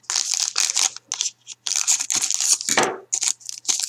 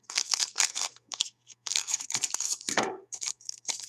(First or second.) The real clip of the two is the first